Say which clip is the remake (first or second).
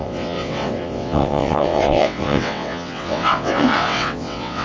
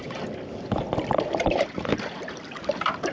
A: first